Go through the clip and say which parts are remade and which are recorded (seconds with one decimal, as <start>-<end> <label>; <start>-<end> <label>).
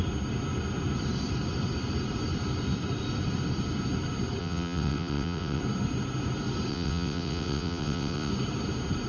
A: 0.0-4.4 recorded; 4.4-5.6 remade; 5.6-6.7 recorded; 6.7-8.3 remade; 8.3-9.1 recorded